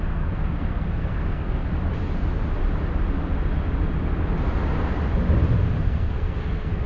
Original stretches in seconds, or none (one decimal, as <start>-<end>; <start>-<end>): 1.7-5.8